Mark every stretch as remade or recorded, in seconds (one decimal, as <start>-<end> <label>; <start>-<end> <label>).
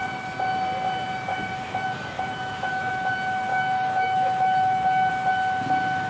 0.0-1.3 recorded; 1.3-2.9 remade; 2.9-3.5 recorded; 3.5-5.1 remade; 5.1-6.1 recorded